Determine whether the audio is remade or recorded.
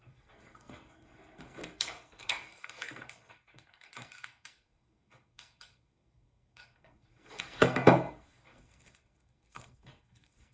remade